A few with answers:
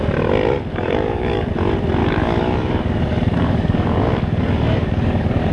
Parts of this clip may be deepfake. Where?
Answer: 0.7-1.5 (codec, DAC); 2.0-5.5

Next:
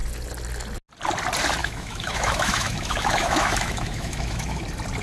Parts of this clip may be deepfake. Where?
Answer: 1.6-4.6 (autoencoder, DAC-VAE)

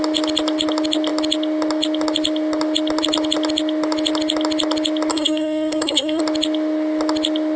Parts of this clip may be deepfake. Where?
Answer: 5.1-6.2 (codec, SNAC)

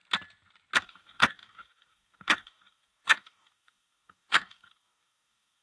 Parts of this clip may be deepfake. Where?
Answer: 0.8-5.6 (codec, DAC)